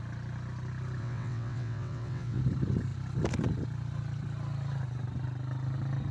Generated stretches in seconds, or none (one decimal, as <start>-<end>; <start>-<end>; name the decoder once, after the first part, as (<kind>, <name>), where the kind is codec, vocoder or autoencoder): 1.0-2.4 (vocoder, WaveNeXt)